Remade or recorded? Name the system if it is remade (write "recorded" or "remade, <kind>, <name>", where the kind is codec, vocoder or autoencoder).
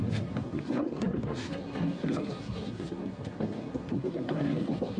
remade, codec, SNAC